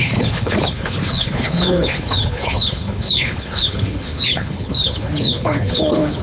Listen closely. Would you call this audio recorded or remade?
remade